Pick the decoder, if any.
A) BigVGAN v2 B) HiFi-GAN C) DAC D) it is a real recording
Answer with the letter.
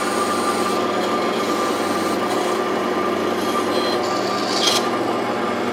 D